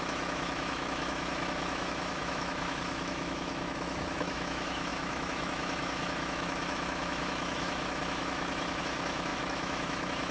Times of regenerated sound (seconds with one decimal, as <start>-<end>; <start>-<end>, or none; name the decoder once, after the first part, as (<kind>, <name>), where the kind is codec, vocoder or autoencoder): 0.0-10.3 (autoencoder, DAC-VAE)